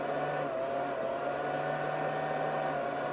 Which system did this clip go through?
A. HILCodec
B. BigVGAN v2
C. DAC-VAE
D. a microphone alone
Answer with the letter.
D